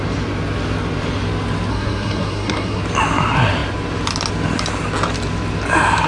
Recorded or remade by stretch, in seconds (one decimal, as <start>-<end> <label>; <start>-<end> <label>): 0.0-1.7 recorded; 1.7-2.8 remade; 2.8-6.1 recorded